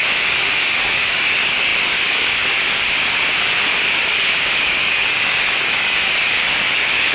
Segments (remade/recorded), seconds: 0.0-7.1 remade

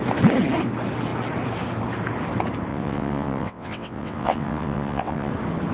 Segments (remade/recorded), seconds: 0.0-2.7 recorded; 2.7-5.3 remade; 5.3-5.7 recorded